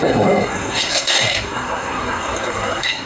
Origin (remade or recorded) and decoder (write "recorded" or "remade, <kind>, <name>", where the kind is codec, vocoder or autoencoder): remade, codec, SNAC